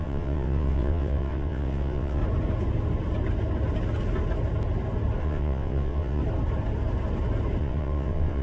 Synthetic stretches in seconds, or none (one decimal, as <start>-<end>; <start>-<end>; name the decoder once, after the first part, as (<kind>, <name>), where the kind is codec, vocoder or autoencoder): 0.0-2.2 (vocoder, WaveNeXt); 5.2-6.2; 7.6-8.4